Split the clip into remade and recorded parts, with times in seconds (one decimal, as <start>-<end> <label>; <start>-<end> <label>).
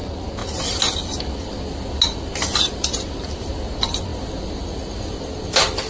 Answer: 0.0-5.9 recorded